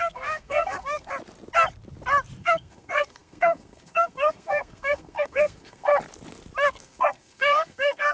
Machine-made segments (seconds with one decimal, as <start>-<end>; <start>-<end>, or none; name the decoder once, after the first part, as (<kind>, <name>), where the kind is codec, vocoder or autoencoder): 0.0-1.1 (codec, SNAC); 2.4-5.9; 6.7-8.1